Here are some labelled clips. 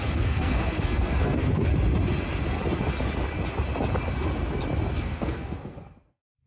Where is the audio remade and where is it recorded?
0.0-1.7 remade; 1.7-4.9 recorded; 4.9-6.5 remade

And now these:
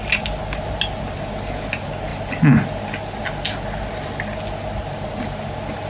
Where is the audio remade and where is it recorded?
0.0-5.9 recorded

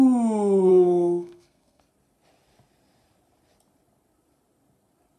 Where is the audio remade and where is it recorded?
0.0-0.7 recorded; 0.7-1.8 remade; 1.8-5.2 recorded